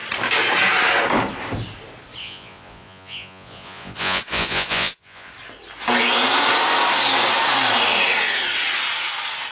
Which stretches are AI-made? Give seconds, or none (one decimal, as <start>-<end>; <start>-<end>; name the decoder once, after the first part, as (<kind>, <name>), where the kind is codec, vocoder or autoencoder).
2.2-5.3 (vocoder, Vocos)